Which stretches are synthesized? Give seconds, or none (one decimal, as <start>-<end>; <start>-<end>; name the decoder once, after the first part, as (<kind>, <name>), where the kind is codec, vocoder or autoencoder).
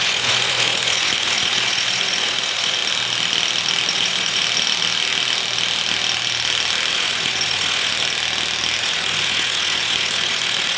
0.0-2.8 (vocoder, Vocos); 3.9-4.4; 6.9-7.9; 8.8-10.8